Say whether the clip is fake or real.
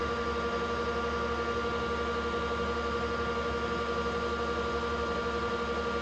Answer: real